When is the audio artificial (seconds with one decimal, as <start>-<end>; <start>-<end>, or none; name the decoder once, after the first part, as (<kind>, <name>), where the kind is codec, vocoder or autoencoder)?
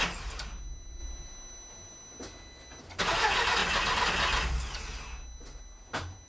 none